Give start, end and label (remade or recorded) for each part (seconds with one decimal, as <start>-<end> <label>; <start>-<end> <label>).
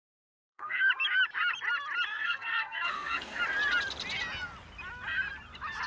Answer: 0.0-0.9 remade; 0.9-2.1 recorded; 2.1-3.4 remade; 3.4-5.9 recorded